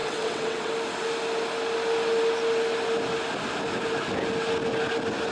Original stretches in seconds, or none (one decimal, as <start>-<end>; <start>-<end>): 0.7-5.3